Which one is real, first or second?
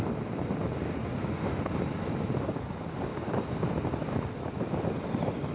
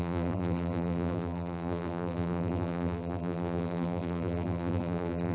first